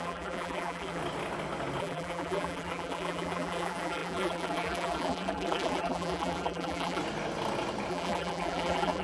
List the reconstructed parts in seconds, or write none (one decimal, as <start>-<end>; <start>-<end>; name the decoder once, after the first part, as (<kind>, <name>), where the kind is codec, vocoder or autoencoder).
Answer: 0.0-1.0 (vocoder, BigVGAN v2); 1.8-7.0; 7.9-9.0